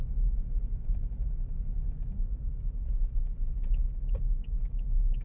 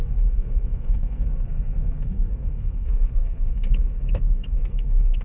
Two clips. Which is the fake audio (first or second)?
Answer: second